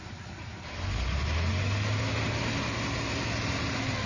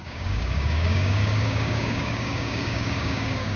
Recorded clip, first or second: first